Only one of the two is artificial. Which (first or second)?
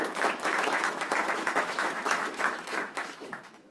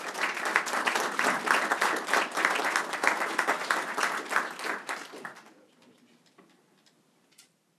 first